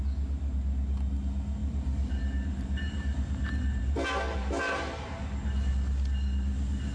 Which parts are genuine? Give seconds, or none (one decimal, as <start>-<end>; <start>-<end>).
0.0-1.6; 5.7-6.9